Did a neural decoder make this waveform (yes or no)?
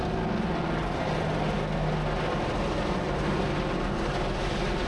no